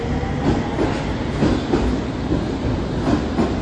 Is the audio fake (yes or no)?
no